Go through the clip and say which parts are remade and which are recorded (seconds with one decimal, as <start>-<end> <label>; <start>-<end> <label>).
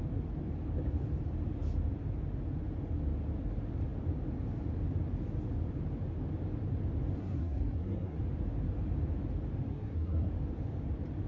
0.0-7.2 recorded; 7.2-8.2 remade; 8.2-9.7 recorded; 9.7-10.3 remade; 10.3-11.3 recorded